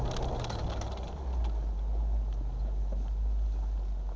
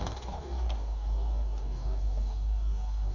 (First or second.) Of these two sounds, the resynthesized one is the second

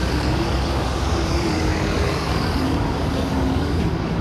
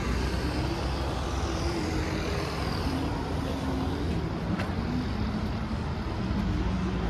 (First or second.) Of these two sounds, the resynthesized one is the first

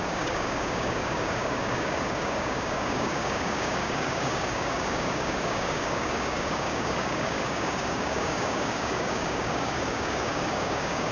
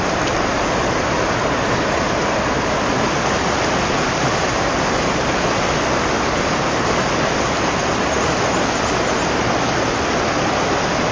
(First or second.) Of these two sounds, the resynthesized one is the first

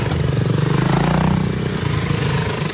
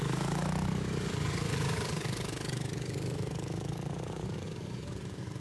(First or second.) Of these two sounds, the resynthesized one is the second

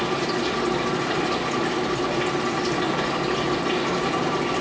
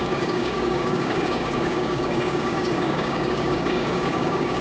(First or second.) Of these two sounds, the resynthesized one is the second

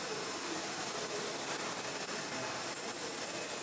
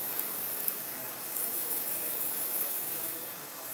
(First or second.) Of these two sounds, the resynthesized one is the second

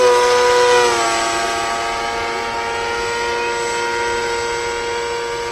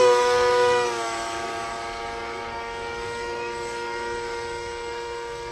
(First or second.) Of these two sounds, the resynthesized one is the second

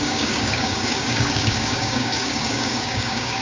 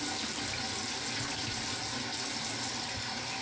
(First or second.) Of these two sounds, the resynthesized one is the first